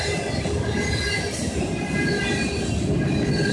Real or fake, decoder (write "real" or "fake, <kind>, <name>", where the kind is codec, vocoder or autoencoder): real